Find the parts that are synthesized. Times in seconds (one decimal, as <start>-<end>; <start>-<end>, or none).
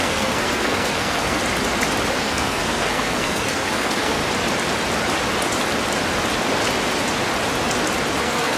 0.0-1.4; 2.1-4.2; 8.2-8.6